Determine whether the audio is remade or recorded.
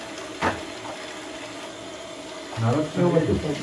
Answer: recorded